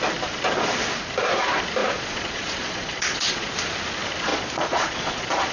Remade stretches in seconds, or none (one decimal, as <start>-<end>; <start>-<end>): 1.8-3.5; 4.3-5.5